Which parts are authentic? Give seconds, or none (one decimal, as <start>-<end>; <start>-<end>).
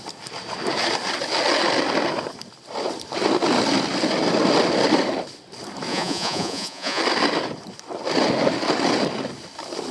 0.0-5.9; 7.0-9.9